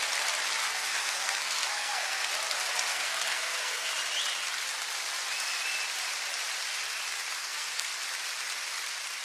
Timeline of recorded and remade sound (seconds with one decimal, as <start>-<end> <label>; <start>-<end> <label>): 0.0-0.6 recorded; 0.6-2.3 remade; 2.3-2.9 recorded; 2.9-3.9 remade; 3.9-7.4 recorded; 7.4-7.9 remade; 7.9-9.2 recorded